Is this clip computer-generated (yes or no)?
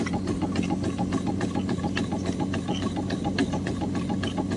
no